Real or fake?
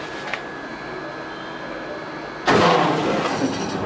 real